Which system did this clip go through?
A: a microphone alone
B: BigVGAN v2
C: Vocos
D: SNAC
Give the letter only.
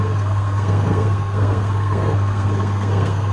D